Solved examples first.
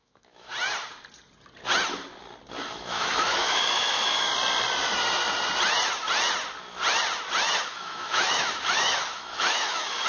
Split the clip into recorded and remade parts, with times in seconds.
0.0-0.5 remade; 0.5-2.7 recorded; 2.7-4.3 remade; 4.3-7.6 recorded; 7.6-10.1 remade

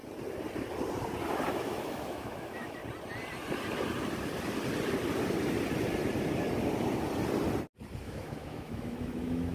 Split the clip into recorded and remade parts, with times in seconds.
0.0-1.5 recorded; 1.5-2.8 remade; 2.8-8.0 recorded; 8.0-9.5 remade

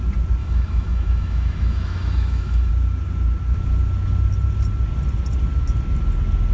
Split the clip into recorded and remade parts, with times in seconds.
0.0-0.4 recorded; 0.4-2.7 remade; 2.7-6.5 recorded

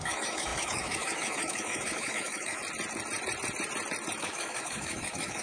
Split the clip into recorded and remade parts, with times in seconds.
0.0-2.6 remade; 2.6-4.2 recorded; 4.2-5.4 remade